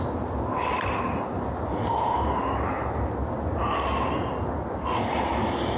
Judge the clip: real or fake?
real